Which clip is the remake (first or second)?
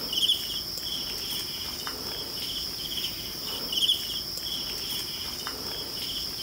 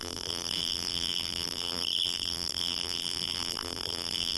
second